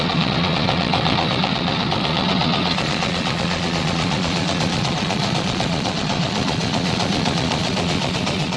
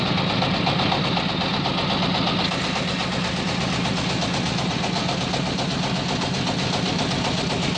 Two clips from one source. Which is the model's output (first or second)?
first